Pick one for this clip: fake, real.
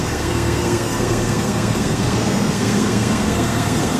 fake